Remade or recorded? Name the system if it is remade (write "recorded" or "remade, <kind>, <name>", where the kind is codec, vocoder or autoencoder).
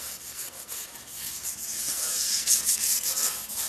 remade, codec, SNAC